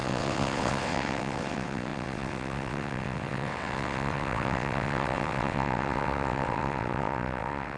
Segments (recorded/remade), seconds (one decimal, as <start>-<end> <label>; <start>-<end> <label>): 0.0-7.8 remade